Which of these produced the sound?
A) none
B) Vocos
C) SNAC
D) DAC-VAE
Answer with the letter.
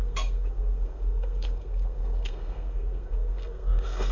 C